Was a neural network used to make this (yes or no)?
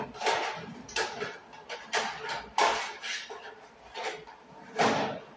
yes